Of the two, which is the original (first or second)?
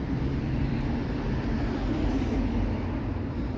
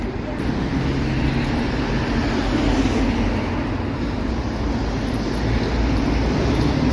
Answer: second